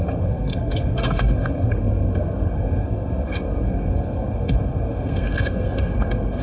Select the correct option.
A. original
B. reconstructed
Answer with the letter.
B